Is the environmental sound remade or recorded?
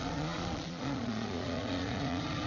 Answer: remade